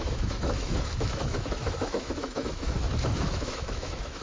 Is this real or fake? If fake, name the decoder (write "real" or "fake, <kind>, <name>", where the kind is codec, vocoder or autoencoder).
fake, autoencoder, DAC-VAE